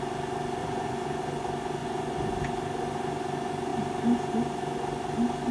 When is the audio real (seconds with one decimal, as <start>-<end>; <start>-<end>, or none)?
0.0-0.6; 1.2-1.8; 2.3-5.5